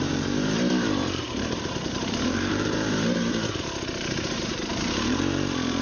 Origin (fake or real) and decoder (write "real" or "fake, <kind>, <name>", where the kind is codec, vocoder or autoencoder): fake, vocoder, BigVGAN v2